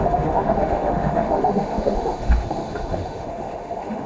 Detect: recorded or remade remade